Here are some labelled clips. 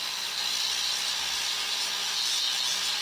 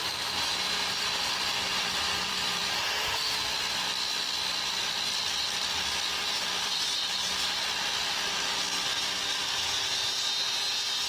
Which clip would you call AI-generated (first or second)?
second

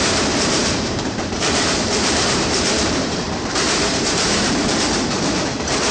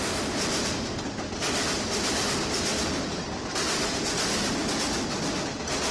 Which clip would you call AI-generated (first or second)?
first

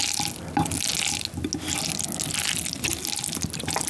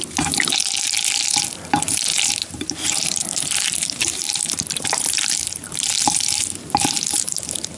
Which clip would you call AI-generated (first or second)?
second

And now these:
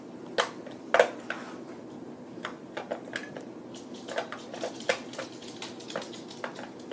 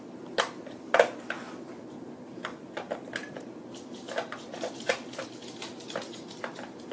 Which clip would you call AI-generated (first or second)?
second